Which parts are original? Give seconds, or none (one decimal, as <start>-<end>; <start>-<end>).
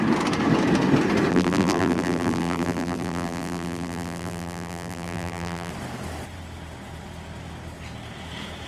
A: 0.0-1.3; 5.7-8.7